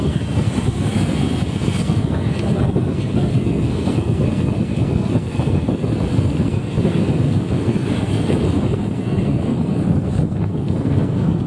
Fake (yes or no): yes